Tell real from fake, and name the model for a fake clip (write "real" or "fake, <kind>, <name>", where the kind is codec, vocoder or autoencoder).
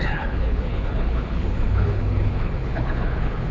fake, codec, HILCodec